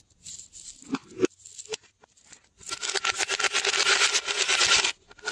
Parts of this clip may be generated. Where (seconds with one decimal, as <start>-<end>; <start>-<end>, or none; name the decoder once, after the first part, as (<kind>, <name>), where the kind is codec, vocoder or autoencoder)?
none

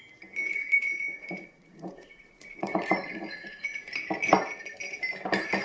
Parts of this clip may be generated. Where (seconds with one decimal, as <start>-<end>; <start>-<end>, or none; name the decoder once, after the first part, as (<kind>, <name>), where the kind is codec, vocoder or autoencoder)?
0.5-3.9 (vocoder, Vocos)

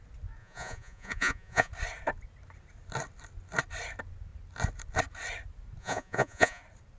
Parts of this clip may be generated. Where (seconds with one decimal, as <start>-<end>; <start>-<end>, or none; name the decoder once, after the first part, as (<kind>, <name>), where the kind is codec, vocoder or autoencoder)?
0.4-1.7 (vocoder, Vocos); 5.8-6.6

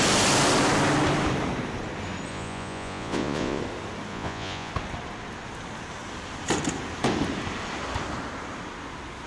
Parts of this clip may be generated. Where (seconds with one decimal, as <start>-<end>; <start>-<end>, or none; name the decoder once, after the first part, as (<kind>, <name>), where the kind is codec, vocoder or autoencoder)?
2.3-3.6 (vocoder, Vocos); 4.1-4.7

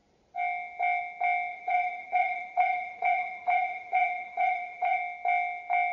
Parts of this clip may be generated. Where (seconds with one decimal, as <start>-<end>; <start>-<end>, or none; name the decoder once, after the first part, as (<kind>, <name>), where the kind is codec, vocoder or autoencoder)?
1.5-5.0 (vocoder, Vocos)